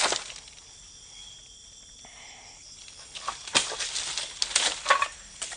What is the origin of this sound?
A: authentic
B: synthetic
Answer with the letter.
A